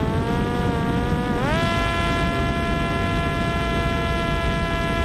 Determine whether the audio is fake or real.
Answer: real